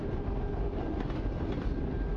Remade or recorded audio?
recorded